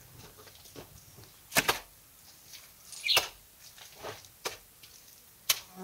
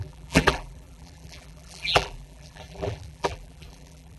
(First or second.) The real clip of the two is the first